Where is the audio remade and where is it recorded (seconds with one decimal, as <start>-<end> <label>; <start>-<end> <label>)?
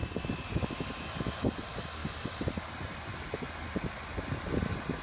0.0-5.0 recorded